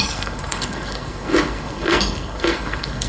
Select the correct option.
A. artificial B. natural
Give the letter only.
A